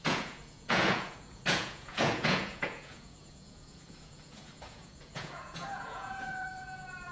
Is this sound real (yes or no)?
no